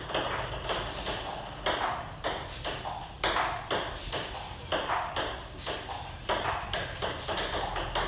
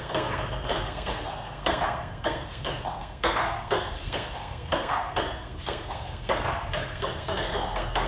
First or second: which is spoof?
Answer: second